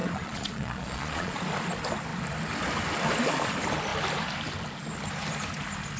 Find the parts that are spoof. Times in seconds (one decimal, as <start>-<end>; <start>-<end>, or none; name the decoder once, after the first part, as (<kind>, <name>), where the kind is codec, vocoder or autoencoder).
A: 0.0-1.4 (vocoder, Vocos)